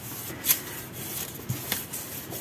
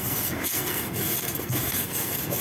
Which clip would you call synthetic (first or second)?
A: second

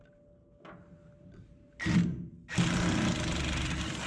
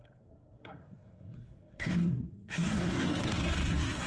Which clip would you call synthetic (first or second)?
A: second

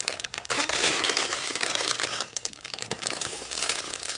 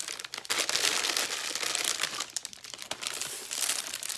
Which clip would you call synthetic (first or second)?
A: first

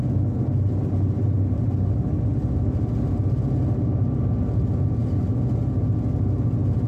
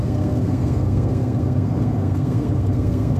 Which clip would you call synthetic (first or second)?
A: second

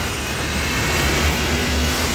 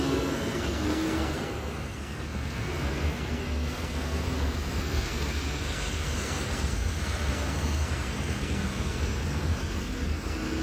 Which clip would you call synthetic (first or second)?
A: second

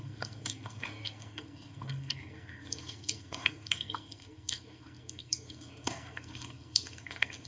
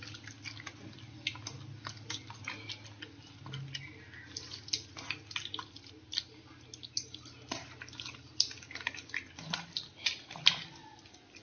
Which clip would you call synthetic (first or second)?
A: first